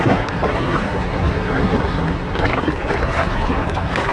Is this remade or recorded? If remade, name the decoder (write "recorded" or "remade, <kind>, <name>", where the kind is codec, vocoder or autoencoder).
remade, codec, SNAC